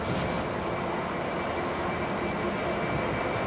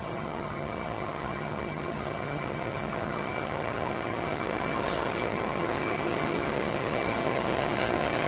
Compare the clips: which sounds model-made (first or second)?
second